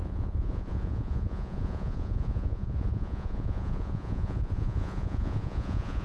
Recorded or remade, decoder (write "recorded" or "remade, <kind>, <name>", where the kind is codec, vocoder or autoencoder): remade, vocoder, Vocos